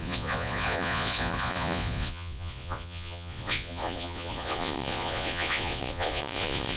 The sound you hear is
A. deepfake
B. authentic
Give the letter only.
A